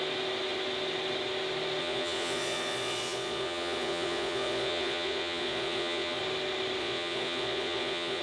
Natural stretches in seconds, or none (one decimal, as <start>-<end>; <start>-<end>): 0.0-1.8; 6.2-6.8